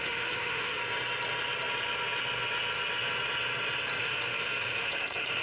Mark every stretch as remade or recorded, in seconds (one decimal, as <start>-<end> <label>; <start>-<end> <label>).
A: 0.0-0.8 remade; 0.8-4.0 recorded; 4.0-5.4 remade